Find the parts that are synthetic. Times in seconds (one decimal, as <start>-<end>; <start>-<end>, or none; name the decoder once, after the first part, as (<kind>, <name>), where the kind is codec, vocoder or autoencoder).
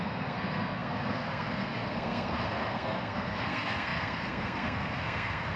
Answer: 0.0-5.6 (codec, SNAC)